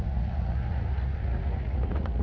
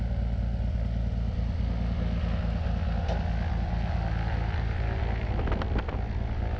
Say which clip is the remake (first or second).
first